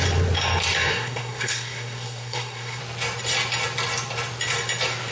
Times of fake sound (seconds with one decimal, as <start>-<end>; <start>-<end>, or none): 0.9-2.8